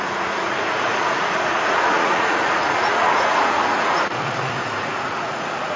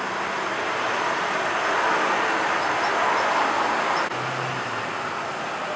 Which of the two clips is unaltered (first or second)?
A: second